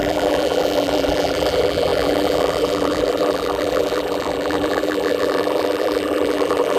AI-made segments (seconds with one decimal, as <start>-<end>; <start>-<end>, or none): 0.0-6.8